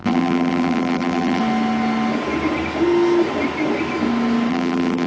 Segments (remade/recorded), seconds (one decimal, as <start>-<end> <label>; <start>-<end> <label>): 0.0-1.4 remade; 1.4-4.5 recorded; 4.5-5.1 remade